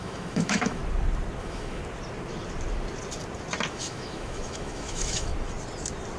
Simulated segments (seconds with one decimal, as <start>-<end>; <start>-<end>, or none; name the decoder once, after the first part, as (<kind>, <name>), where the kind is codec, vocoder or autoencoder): 0.0-0.8 (autoencoder, DAC-VAE); 1.4-1.8; 3.7-5.3

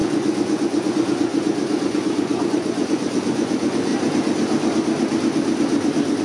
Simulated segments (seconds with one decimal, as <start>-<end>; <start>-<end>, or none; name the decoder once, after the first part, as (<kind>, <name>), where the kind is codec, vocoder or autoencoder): 0.0-3.9 (vocoder, Vocos)

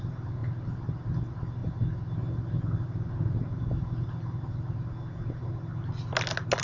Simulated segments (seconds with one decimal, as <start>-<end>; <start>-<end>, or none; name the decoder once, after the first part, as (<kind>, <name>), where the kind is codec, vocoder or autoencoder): none

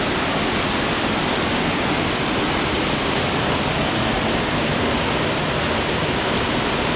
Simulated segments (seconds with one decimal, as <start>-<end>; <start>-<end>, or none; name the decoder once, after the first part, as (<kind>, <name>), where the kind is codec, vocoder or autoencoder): none

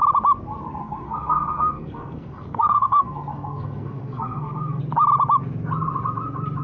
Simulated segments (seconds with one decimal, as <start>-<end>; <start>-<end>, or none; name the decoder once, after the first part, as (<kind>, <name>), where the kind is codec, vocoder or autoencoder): 0.8-4.8 (codec, SNAC)